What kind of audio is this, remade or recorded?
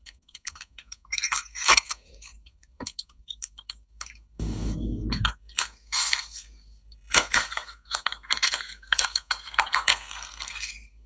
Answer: remade